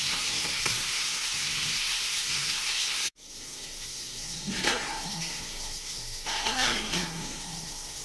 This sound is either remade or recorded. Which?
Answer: remade